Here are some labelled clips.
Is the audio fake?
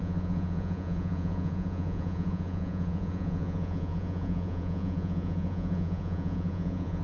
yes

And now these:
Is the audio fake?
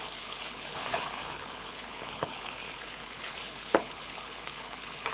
yes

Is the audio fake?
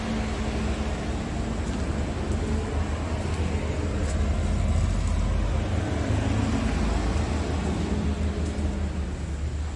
no